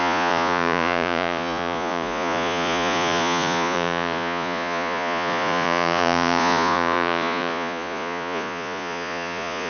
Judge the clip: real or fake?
fake